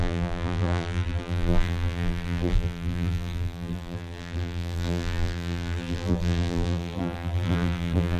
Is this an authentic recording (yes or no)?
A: no